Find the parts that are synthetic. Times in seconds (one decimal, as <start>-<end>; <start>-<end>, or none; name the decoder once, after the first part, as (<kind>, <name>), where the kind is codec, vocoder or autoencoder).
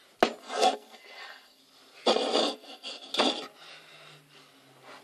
0.4-1.6 (codec, SNAC); 2.4-3.1